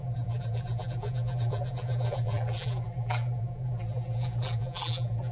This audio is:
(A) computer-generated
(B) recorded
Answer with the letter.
A